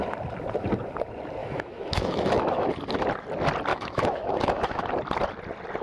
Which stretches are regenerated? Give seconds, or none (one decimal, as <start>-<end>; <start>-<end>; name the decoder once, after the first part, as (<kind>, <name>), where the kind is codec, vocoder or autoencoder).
1.4-2.7 (autoencoder, DAC-VAE); 3.7-4.8